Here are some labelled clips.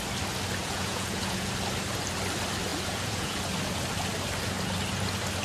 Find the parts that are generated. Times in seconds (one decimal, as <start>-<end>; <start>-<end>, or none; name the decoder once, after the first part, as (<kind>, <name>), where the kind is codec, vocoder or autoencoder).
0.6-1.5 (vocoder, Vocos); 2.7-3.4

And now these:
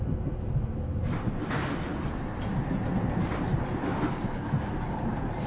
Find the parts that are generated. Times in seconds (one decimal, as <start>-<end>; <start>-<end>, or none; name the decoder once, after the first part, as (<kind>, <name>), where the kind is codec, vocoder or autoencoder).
none

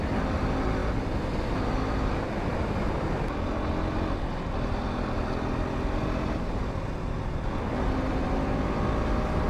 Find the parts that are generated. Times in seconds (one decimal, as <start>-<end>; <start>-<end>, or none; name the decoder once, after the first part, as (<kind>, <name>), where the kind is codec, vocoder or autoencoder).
none

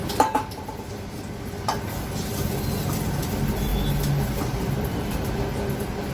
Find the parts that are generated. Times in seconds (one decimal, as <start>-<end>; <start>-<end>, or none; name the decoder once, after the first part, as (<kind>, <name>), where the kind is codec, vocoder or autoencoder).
0.0-2.8 (vocoder, BigVGAN v2)